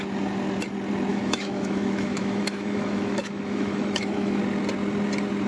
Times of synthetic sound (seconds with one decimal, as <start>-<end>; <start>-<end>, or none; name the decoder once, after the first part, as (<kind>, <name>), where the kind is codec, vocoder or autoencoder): 1.1-4.4 (autoencoder, DAC-VAE)